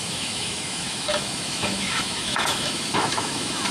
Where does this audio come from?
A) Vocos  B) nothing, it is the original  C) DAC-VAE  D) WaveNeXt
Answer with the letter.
C